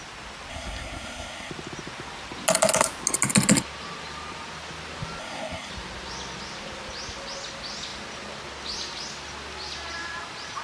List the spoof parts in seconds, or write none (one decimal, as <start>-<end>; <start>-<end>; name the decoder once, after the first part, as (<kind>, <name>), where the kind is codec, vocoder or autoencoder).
0.5-1.5 (codec, SNAC); 5.2-5.7

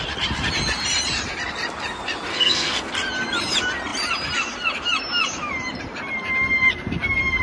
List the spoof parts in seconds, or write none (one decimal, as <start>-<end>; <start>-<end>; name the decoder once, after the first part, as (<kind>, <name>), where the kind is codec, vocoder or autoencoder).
2.3-2.9 (codec, SNAC)